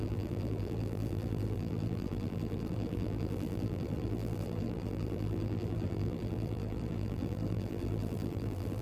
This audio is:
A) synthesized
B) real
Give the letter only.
A